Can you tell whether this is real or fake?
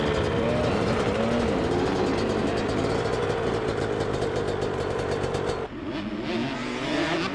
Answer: real